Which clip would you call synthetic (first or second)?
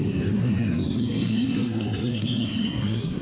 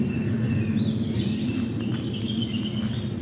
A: first